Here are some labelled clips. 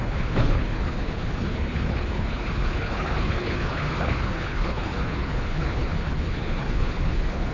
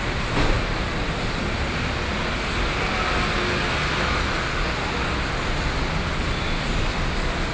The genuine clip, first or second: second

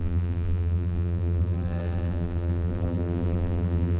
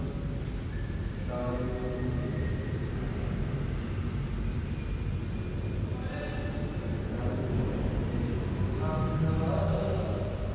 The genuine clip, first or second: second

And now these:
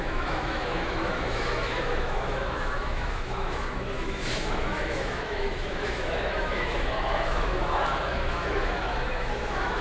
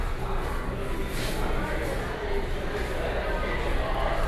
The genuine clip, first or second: second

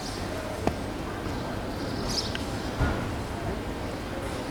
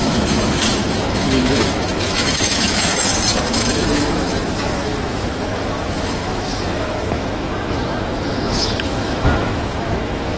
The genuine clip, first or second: first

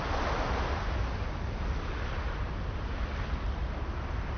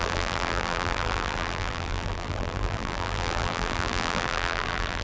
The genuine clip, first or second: first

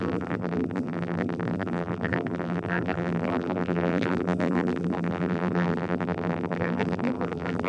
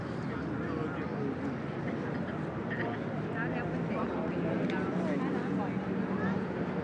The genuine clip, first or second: second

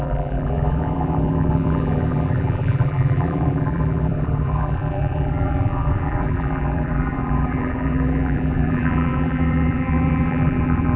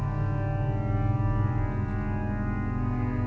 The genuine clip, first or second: second